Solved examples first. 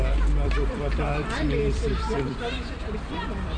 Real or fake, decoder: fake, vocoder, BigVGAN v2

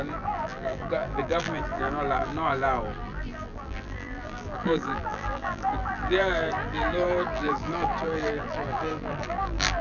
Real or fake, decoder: fake, vocoder, BigVGAN v2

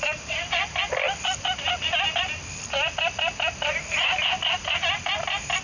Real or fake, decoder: real